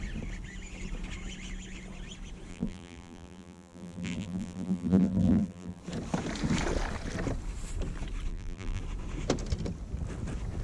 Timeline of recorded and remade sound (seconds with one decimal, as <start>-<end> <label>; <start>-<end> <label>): 0.0-2.5 recorded; 2.5-5.8 remade; 5.8-8.3 recorded; 8.3-8.8 remade; 8.8-10.6 recorded